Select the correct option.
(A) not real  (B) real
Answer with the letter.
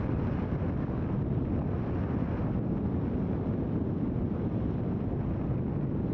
B